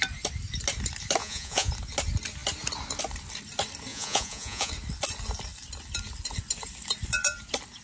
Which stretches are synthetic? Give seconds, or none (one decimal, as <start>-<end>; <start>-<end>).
1.2-1.7; 3.9-4.7